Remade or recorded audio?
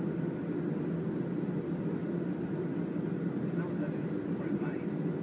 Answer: recorded